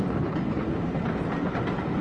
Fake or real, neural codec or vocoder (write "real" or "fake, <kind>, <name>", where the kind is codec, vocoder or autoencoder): real